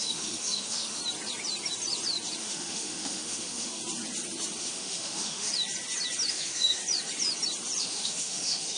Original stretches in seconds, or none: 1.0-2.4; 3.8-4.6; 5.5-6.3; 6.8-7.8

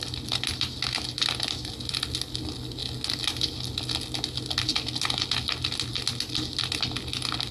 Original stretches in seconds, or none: 0.0-7.5

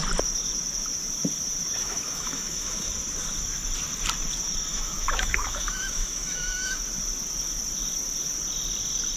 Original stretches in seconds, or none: 0.0-1.8; 2.9-4.7; 6.8-9.2

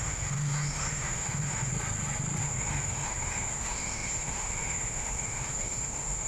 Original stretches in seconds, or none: 1.7-2.4

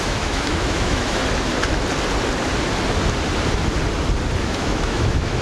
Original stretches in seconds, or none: 1.2-4.4

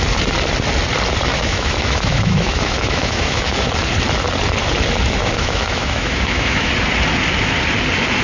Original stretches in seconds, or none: 0.0-1.3; 3.7-5.2; 6.7-8.2

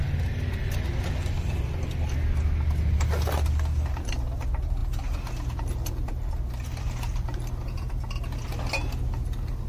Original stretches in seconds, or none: 0.0-9.7

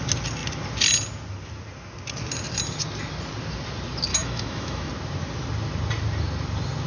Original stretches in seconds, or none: 0.0-4.1; 4.9-6.9